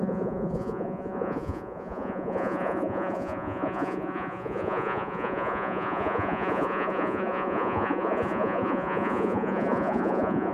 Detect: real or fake fake